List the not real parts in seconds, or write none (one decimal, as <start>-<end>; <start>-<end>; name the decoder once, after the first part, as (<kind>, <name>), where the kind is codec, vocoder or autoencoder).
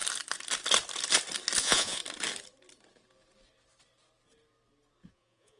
1.6-2.0 (vocoder, Vocos); 5.1-5.6